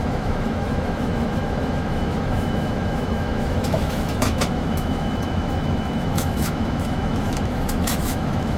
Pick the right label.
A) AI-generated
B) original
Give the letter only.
A